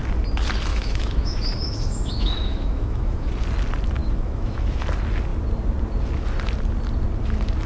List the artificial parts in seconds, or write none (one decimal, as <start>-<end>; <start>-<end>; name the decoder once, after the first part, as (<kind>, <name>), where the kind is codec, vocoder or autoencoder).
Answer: 0.7-3.3 (autoencoder, DAC-VAE); 4.0-4.8